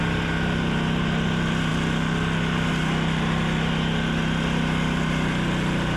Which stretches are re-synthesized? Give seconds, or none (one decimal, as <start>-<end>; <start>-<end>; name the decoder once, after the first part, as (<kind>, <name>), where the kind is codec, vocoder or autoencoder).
none